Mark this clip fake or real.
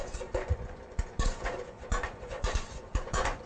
fake